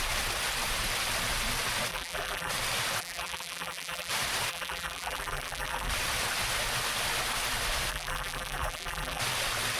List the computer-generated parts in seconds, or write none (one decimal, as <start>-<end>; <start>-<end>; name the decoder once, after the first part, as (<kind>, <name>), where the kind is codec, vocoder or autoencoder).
1.9-2.5 (vocoder, BigVGAN v2); 3.0-4.1; 4.5-5.9; 7.9-9.2